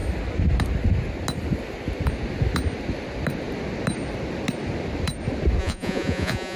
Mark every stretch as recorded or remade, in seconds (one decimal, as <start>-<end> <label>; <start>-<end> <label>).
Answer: 0.0-5.6 recorded; 5.6-6.6 remade